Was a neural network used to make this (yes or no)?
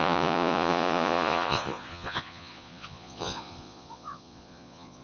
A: yes